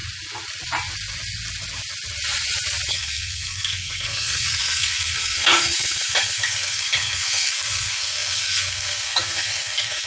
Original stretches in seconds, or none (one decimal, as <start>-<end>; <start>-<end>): 0.0-2.9